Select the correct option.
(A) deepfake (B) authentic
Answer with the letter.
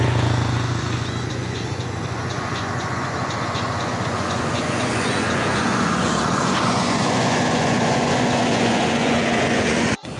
A